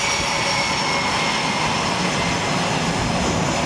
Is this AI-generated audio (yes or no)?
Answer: no